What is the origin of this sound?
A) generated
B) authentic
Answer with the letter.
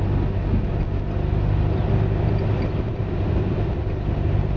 B